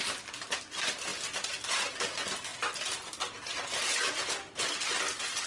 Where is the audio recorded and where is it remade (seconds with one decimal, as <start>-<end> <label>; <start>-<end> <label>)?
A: 0.0-5.5 recorded